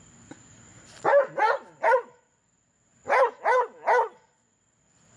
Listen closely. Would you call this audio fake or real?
real